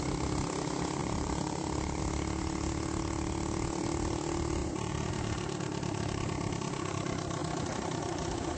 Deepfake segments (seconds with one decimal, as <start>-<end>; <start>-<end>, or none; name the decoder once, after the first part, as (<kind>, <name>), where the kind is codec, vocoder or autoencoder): 1.0-2.0 (vocoder, BigVGAN v2); 4.6-5.1; 7.4-8.0